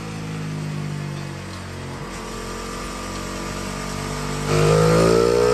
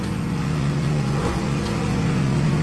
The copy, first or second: second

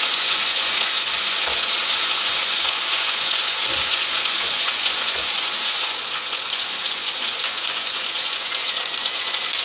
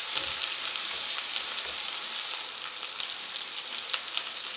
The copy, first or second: first